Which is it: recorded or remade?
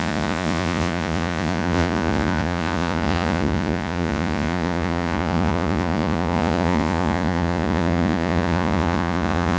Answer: remade